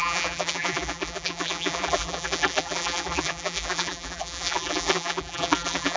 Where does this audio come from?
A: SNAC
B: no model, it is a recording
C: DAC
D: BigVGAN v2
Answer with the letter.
D